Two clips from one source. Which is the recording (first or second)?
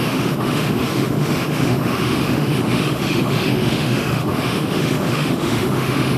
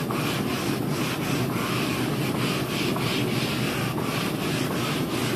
second